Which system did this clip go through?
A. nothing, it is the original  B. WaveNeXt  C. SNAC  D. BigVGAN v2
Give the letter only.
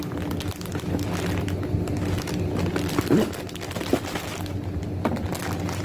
A